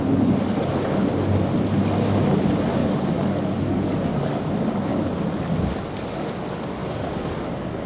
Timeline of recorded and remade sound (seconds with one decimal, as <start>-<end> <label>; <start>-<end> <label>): 0.0-2.8 recorded; 2.8-4.4 remade; 4.4-6.8 recorded; 6.8-7.9 remade